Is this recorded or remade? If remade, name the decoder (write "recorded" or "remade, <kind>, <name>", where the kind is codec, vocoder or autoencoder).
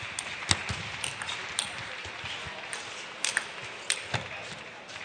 recorded